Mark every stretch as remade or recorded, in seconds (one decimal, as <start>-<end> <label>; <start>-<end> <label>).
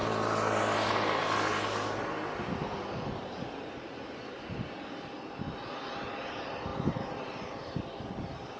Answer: 0.0-8.6 recorded